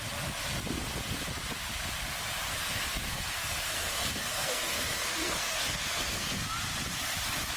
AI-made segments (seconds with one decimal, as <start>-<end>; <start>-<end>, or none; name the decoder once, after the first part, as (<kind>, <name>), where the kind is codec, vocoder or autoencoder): 2.5-6.4 (codec, SNAC)